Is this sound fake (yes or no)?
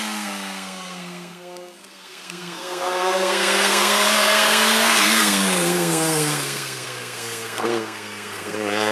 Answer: yes